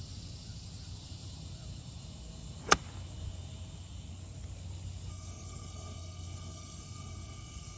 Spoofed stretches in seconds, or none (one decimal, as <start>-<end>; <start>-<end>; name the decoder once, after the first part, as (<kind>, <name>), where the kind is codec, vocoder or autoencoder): 5.1-7.8 (codec, SNAC)